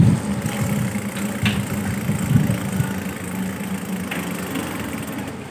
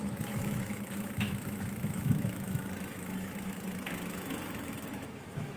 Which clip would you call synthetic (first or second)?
second